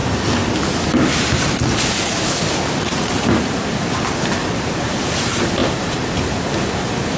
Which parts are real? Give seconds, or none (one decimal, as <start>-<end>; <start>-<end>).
0.0-7.2

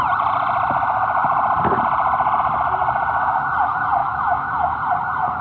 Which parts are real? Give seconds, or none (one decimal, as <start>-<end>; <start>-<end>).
0.0-4.0; 4.8-5.4

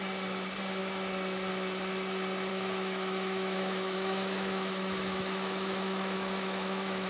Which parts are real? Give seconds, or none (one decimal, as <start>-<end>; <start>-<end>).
0.0-2.5

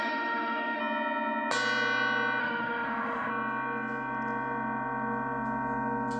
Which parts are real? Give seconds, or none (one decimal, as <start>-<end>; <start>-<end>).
0.8-2.4; 3.3-6.2